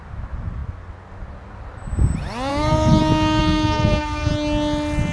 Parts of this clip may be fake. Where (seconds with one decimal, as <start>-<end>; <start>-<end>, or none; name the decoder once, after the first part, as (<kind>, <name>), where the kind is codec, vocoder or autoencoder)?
2.5-3.0 (codec, SNAC); 3.4-4.3